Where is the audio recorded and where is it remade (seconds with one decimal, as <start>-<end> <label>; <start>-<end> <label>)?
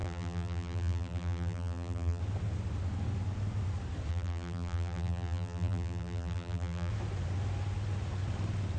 0.0-2.2 remade; 2.2-4.1 recorded; 4.1-6.9 remade; 6.9-8.8 recorded